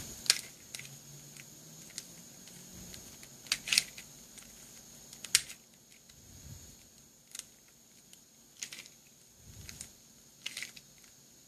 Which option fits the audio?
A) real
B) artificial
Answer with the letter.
A